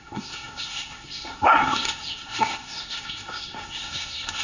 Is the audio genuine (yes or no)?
no